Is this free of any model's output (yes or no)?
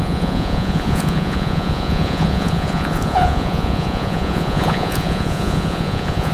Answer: no